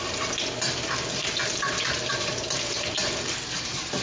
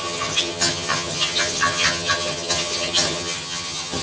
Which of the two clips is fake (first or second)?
second